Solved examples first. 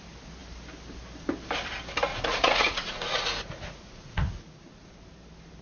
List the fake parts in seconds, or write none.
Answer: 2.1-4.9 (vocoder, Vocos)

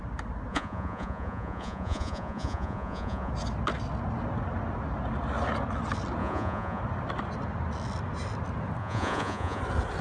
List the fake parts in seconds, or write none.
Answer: 0.5-3.3 (vocoder, Vocos); 6.2-6.8; 8.8-9.6

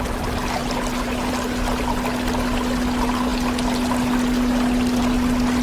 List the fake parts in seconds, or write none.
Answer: none

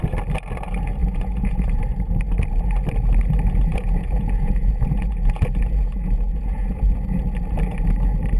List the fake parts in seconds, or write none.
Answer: 1.0-1.8 (vocoder, Vocos); 3.7-7.2

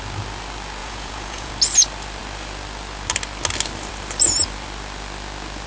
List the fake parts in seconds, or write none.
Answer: 0.8-1.5 (vocoder, Vocos)

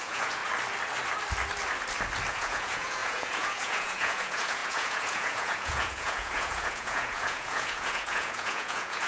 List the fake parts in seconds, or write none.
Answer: 0.0-0.4 (vocoder, Vocos); 2.3-9.1